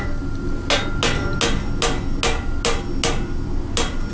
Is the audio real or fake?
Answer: real